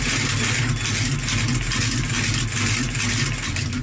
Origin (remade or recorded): recorded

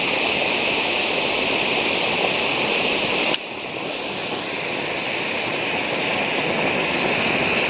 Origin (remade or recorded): recorded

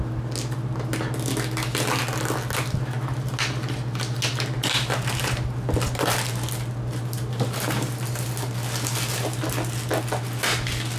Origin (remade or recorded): recorded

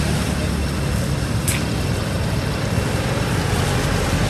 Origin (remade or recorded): recorded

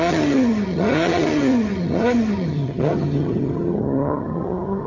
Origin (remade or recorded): remade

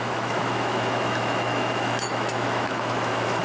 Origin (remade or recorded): remade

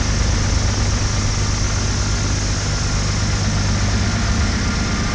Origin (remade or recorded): recorded